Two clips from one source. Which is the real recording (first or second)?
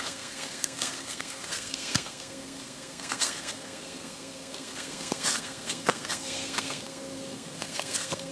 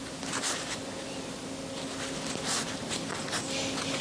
second